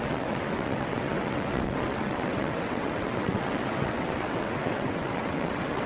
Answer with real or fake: fake